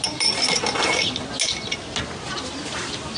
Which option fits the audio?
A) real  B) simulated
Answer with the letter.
A